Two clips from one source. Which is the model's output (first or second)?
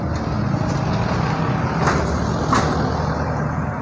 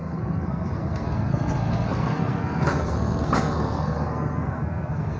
second